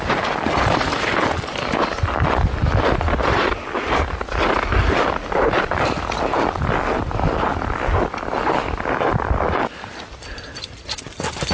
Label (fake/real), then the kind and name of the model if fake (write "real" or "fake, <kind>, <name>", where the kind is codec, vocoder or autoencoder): real